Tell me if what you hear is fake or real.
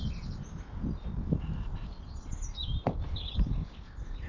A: real